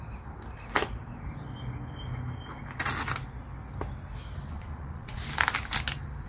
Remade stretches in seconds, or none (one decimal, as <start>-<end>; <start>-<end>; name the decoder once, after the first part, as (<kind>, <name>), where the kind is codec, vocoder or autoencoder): 4.5-5.2 (vocoder, Vocos)